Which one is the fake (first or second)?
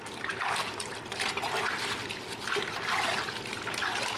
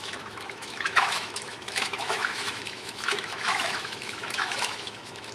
second